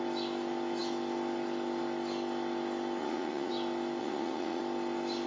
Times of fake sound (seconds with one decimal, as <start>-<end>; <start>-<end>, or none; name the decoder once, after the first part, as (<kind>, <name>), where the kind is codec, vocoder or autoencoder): 3.0-3.5 (vocoder, Vocos); 4.0-4.6